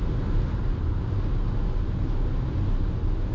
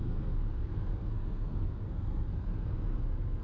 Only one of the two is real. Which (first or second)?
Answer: first